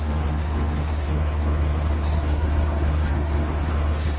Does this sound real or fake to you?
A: fake